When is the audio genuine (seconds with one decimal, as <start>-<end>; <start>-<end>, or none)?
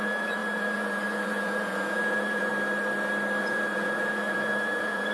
2.5-3.4